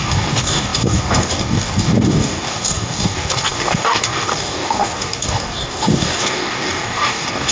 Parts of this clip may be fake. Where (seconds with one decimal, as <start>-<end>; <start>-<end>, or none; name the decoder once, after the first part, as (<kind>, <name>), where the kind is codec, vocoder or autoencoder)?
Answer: 0.0-7.5 (codec, DAC)